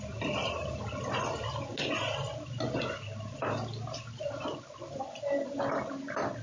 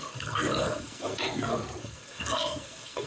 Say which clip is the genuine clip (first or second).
first